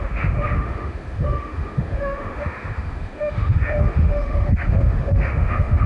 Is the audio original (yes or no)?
no